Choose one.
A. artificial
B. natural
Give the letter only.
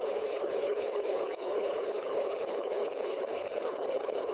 A